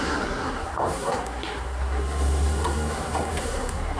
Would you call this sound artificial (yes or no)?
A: yes